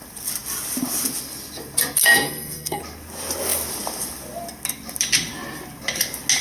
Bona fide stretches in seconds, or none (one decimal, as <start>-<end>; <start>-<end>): 0.0-2.0; 2.8-6.4